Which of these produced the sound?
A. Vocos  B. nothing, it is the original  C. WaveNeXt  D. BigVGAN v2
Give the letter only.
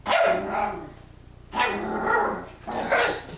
B